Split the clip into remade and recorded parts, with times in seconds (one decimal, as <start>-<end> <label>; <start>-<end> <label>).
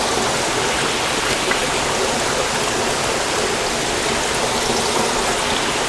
0.0-5.9 recorded